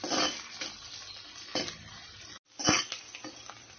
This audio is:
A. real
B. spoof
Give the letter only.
A